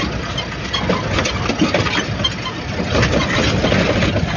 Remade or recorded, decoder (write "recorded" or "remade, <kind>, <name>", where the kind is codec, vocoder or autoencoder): recorded